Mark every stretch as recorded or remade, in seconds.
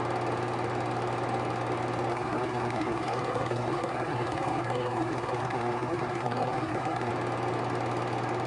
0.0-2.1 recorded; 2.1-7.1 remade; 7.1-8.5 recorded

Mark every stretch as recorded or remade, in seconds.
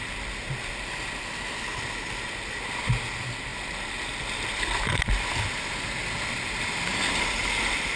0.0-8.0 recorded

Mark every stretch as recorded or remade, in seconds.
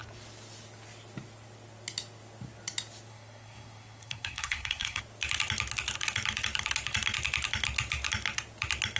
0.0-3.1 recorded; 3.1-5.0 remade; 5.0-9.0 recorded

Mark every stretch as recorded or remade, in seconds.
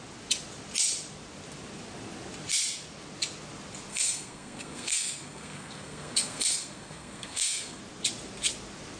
0.0-3.9 recorded; 3.9-7.8 remade; 7.8-9.0 recorded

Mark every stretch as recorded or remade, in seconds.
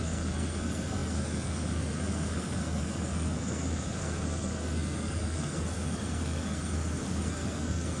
0.0-8.0 remade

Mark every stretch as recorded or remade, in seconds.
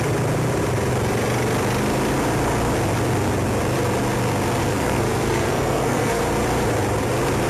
0.0-4.6 recorded; 4.6-6.2 remade; 6.2-7.5 recorded